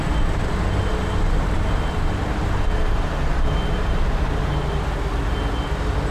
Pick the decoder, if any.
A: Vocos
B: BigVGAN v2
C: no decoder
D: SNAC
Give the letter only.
C